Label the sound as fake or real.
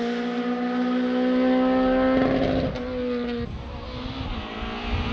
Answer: real